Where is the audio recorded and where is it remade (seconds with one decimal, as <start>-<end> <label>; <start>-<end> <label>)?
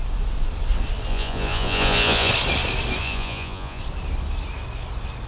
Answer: 0.0-1.1 recorded; 1.1-2.3 remade; 2.3-3.0 recorded; 3.0-3.8 remade; 3.8-5.3 recorded